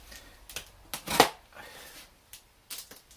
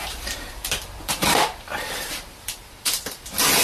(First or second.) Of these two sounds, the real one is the first